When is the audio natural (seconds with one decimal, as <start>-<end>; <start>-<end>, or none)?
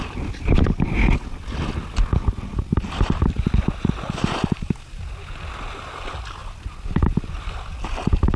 0.0-8.4